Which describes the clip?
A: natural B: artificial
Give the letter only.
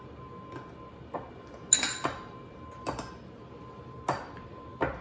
A